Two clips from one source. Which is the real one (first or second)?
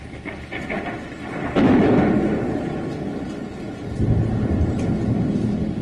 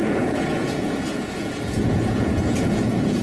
first